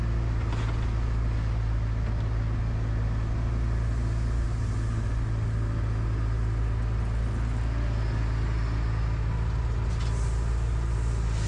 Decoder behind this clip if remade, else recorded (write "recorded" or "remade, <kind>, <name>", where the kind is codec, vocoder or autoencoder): recorded